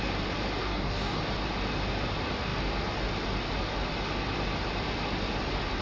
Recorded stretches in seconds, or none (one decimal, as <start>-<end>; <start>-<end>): 0.0-0.6; 1.2-5.8